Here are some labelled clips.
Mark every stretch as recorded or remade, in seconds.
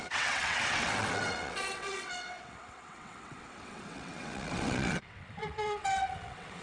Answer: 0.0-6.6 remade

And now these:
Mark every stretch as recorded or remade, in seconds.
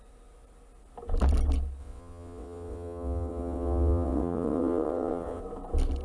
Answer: 0.0-1.8 recorded; 1.8-5.4 remade; 5.4-6.0 recorded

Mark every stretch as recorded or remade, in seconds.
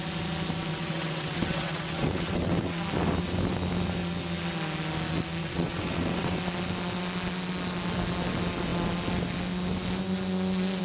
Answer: 0.0-0.7 recorded; 0.7-2.8 remade; 2.8-5.4 recorded; 5.4-6.4 remade; 6.4-10.8 recorded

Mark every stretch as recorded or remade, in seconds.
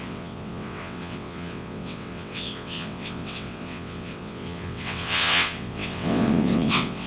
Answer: 0.0-7.1 remade